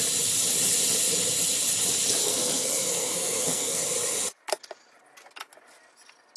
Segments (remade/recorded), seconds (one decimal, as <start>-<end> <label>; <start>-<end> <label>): 0.0-2.2 recorded; 2.2-3.8 remade; 3.8-6.4 recorded